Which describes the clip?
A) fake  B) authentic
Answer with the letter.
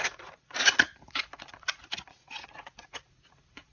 A